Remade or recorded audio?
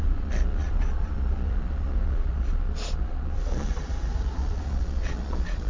remade